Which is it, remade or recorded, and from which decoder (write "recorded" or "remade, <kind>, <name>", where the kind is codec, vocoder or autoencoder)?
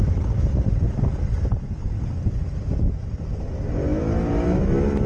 recorded